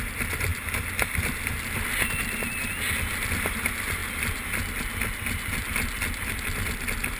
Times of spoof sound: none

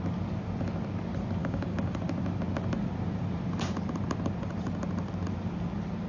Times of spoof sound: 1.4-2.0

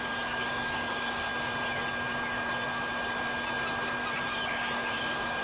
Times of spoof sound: 0.0-1.3; 4.5-5.4